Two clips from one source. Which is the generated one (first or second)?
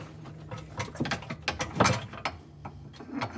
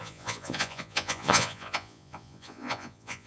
second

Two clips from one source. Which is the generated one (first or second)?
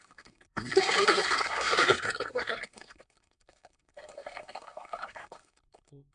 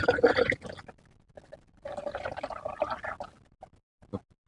first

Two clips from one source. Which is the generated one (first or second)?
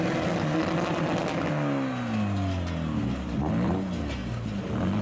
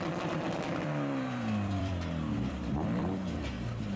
second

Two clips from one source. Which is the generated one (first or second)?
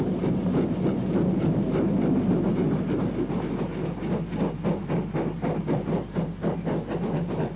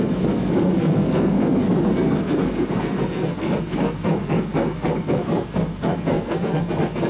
second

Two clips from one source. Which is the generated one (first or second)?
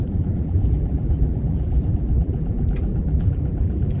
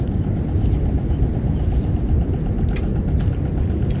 first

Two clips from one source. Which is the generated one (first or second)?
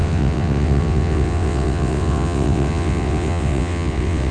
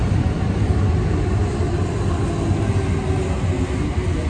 first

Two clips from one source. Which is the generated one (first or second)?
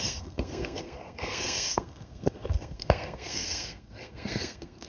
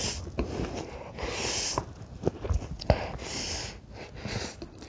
first